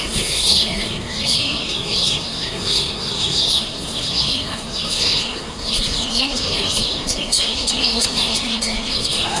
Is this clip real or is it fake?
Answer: fake